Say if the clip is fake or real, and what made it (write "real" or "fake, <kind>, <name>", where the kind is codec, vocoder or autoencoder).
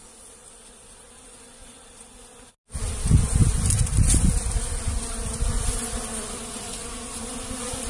real